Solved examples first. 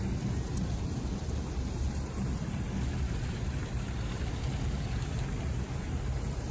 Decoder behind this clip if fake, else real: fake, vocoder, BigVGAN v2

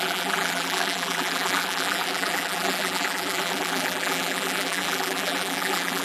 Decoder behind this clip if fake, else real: fake, vocoder, BigVGAN v2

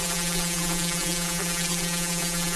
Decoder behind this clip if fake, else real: fake, vocoder, BigVGAN v2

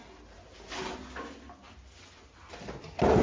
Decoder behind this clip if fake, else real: real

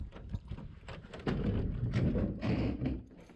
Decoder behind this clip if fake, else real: fake, vocoder, BigVGAN v2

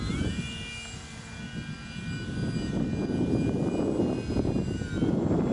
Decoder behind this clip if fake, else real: real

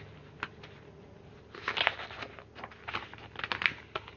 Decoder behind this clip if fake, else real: real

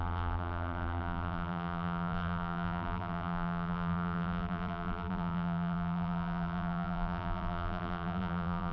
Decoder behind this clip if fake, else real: fake, vocoder, BigVGAN v2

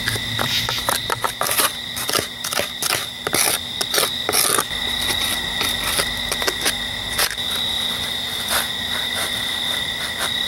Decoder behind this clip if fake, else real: real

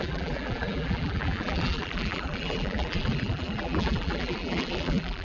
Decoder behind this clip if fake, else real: fake, vocoder, BigVGAN v2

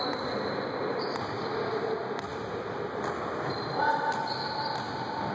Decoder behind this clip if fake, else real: real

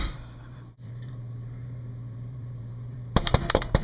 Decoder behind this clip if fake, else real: fake, vocoder, BigVGAN v2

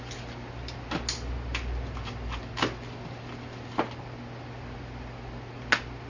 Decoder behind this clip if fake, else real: real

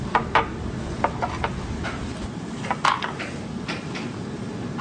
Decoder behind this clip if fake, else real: fake, vocoder, BigVGAN v2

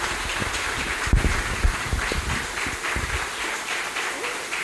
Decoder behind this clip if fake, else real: real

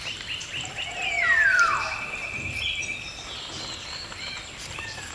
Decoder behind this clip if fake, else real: real